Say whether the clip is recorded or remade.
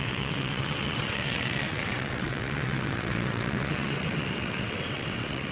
remade